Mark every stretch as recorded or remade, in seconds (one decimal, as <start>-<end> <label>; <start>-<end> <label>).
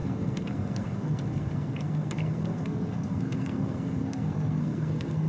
0.0-5.3 remade